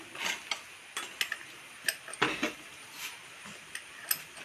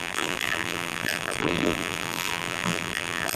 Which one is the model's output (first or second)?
second